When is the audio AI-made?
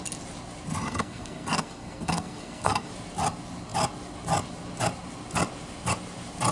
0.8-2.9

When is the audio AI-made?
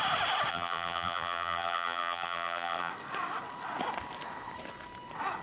0.5-2.9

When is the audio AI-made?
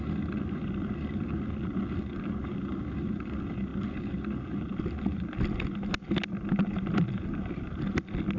none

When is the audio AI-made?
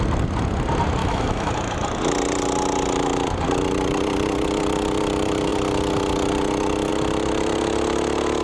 1.0-1.5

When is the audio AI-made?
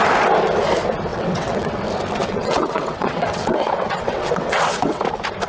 1.1-1.8; 2.2-5.0